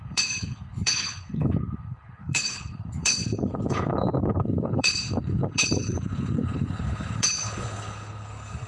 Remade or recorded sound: remade